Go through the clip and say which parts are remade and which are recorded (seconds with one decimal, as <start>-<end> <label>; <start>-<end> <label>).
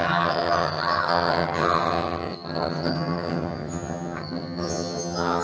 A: 0.0-5.4 remade